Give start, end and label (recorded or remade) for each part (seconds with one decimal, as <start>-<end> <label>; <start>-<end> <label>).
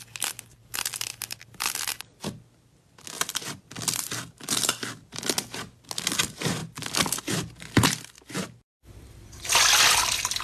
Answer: 0.0-10.4 recorded